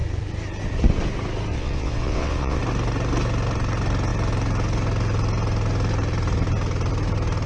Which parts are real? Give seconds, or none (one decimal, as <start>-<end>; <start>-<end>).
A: 0.0-1.5; 2.6-7.5